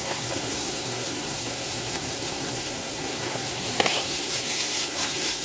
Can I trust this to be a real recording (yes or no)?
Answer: no